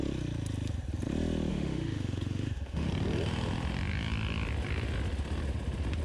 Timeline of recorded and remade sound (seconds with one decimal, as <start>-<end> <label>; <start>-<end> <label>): 0.0-1.5 recorded; 1.5-2.9 remade; 2.9-6.0 recorded